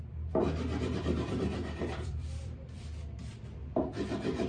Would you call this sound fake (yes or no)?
yes